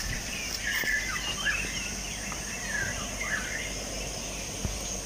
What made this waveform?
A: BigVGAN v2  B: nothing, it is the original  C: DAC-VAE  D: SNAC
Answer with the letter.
B